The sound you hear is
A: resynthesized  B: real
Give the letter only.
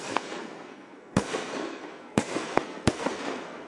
A